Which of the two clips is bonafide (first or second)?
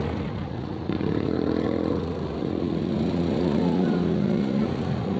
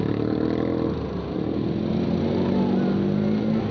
second